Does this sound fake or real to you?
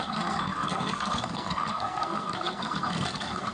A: fake